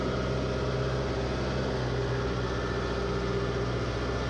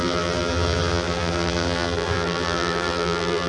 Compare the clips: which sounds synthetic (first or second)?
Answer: second